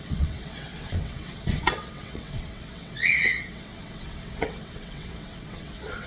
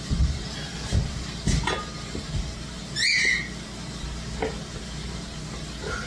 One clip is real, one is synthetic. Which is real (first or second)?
second